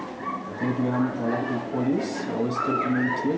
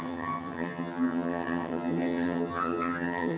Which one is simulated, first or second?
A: second